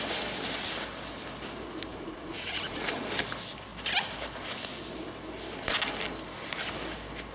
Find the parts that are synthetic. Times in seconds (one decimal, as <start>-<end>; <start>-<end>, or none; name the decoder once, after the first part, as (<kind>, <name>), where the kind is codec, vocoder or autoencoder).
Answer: 1.9-2.9 (vocoder, Vocos)